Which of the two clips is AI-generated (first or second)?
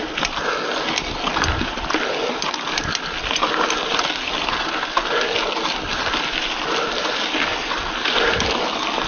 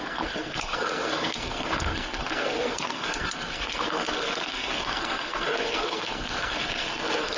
second